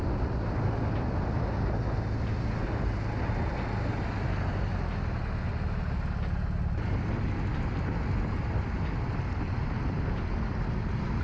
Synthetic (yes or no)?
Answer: no